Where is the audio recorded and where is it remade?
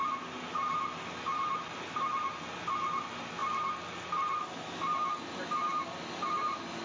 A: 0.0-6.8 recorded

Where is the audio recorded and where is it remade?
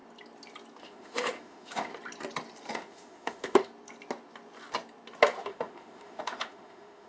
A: 0.0-0.8 recorded; 0.8-1.9 remade; 1.9-2.7 recorded; 2.7-3.7 remade; 3.7-5.4 recorded; 5.4-7.1 remade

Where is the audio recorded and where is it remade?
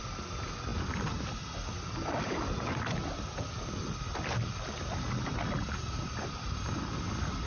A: 0.0-7.5 recorded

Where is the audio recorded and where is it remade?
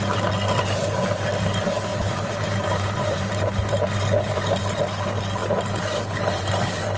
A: 0.0-1.9 recorded; 1.9-4.6 remade; 4.6-5.4 recorded; 5.4-6.5 remade; 6.5-7.0 recorded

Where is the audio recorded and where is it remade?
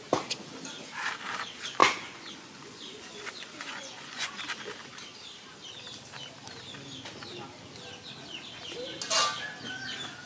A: 0.0-1.8 recorded; 1.8-4.3 remade; 4.3-10.3 recorded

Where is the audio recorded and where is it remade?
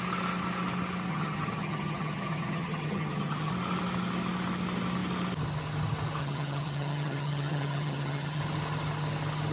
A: 0.0-1.1 recorded; 1.1-3.5 remade; 3.5-6.2 recorded; 6.2-8.4 remade; 8.4-9.5 recorded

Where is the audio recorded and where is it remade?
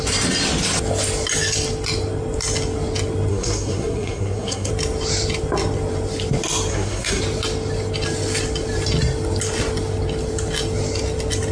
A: 0.0-3.3 recorded; 3.3-4.7 remade; 4.7-6.7 recorded; 6.7-7.2 remade; 7.2-11.5 recorded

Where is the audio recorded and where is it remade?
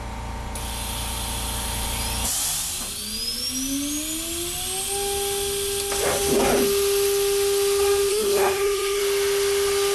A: 0.0-8.1 recorded; 8.1-9.0 remade; 9.0-9.9 recorded